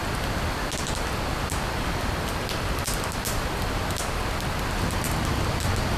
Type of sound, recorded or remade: recorded